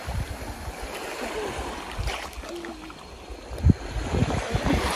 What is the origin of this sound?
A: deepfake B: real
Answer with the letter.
B